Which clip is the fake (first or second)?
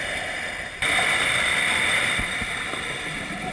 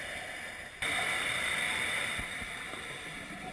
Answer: first